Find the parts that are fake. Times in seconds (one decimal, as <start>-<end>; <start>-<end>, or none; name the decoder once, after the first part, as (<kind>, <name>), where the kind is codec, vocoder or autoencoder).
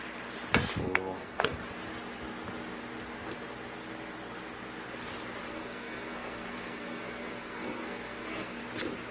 0.8-1.6 (codec, SNAC); 5.5-8.6